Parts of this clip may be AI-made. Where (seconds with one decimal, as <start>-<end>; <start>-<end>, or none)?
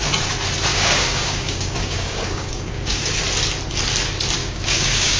0.7-3.1; 4.4-5.2